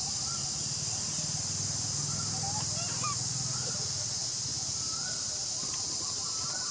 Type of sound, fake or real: real